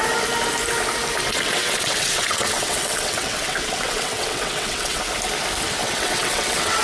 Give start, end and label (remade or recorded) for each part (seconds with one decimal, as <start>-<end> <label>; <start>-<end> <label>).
0.0-1.3 recorded; 1.3-5.0 remade; 5.0-5.8 recorded; 5.8-6.8 remade